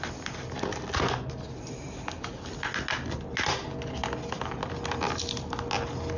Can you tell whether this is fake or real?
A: real